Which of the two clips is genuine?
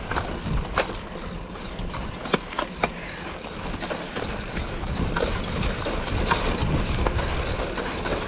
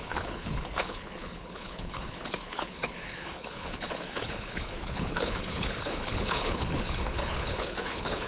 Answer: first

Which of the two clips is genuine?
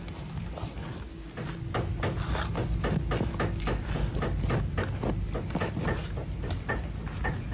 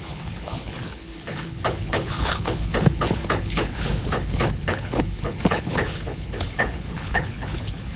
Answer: first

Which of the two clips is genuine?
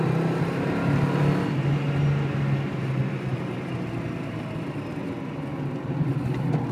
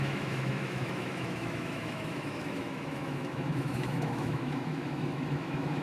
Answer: first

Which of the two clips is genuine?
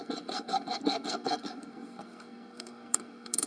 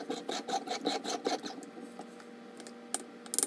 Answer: second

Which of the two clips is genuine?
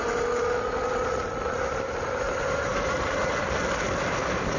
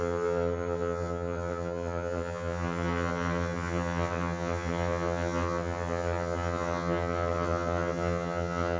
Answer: first